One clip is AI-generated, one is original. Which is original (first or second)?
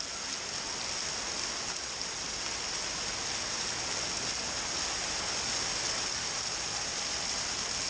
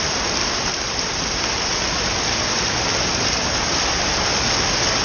first